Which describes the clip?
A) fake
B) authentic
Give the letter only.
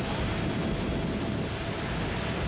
B